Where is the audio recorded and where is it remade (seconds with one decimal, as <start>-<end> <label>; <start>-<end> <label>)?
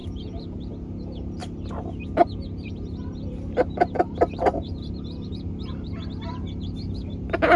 0.0-0.7 remade; 0.7-1.4 recorded; 1.4-6.0 remade; 6.0-7.6 recorded